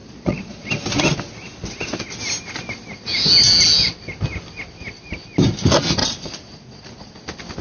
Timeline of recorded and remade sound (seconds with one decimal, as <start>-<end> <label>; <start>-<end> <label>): 0.0-0.7 remade; 0.7-6.0 recorded; 6.0-7.1 remade; 7.1-7.6 recorded